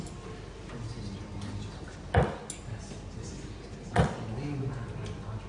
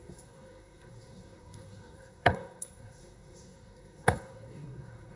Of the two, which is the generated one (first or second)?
second